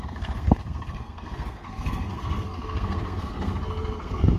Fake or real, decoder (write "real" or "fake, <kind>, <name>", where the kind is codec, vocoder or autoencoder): fake, codec, SNAC